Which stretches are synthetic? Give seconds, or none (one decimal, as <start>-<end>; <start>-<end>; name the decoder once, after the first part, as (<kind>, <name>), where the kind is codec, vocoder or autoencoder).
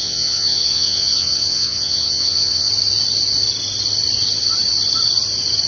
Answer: 0.0-2.7 (vocoder, WaveNeXt)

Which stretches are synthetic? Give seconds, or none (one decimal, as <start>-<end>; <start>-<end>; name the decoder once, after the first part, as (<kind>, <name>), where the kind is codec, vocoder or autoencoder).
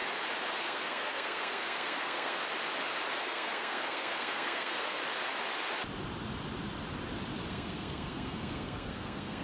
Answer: 0.6-2.4 (codec, SNAC); 3.2-5.0; 7.5-9.4